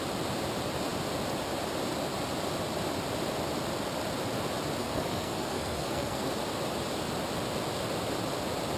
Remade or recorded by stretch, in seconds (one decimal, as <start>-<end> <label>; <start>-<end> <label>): 0.0-4.8 recorded; 4.8-6.3 remade; 6.3-8.8 recorded